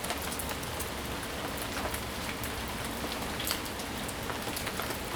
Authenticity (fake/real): real